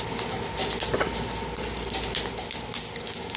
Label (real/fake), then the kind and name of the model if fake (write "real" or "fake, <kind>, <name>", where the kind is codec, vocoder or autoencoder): real